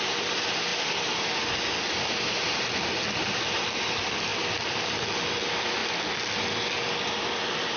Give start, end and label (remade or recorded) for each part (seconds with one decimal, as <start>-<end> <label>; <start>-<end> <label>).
0.0-7.8 recorded